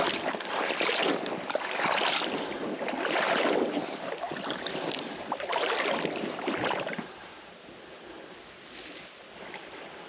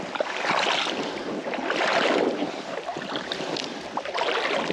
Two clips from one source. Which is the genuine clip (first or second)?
second